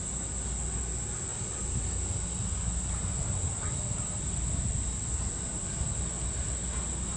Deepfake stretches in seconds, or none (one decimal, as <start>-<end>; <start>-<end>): none